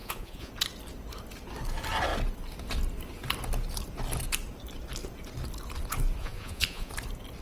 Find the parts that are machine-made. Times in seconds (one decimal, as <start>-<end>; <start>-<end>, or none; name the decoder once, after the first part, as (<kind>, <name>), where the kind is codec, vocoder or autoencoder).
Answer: 0.0-0.5 (vocoder, Vocos); 6.2-6.9